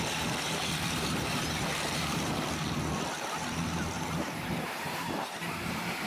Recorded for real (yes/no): no